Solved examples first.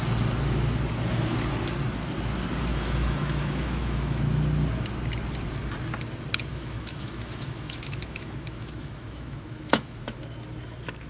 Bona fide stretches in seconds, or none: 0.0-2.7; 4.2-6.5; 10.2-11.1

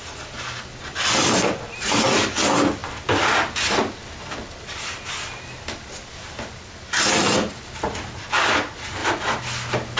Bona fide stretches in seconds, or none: 0.0-10.0